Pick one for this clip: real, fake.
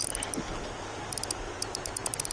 real